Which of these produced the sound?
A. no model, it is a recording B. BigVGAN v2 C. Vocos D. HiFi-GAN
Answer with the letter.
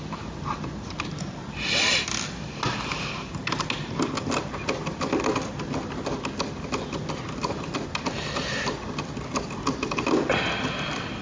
A